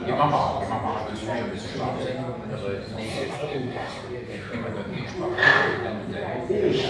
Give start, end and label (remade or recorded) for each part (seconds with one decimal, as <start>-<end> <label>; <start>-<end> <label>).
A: 0.0-3.1 recorded; 3.1-4.0 remade; 4.0-6.9 recorded